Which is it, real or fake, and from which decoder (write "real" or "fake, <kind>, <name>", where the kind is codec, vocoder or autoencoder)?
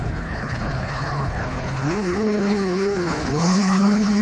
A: fake, codec, HILCodec